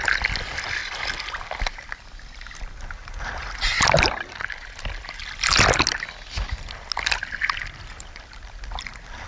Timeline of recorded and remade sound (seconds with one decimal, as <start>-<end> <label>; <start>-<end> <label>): 0.0-9.3 recorded